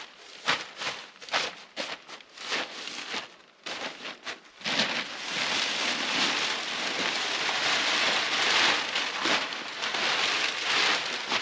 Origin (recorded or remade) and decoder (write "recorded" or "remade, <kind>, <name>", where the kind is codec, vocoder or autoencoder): recorded